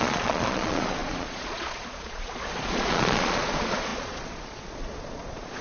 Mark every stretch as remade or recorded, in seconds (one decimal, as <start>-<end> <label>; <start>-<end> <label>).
0.0-5.6 remade